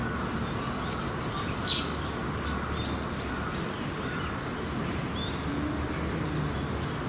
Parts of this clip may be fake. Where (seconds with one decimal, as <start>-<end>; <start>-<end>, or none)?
none